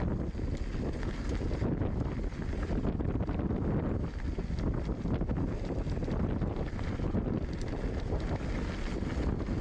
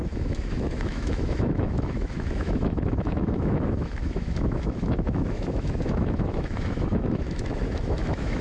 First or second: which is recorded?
first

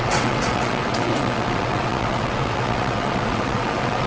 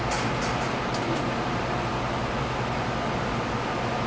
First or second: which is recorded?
second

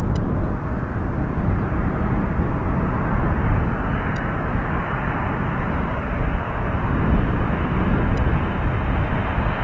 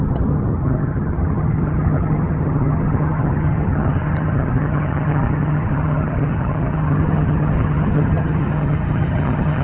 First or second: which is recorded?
first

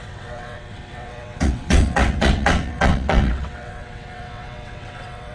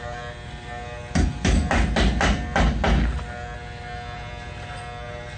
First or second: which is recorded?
second